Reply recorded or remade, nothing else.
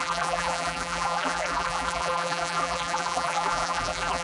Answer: remade